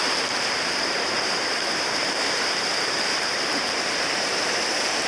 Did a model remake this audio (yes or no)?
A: yes